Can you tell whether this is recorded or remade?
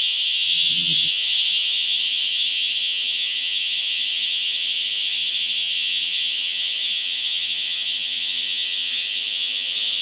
remade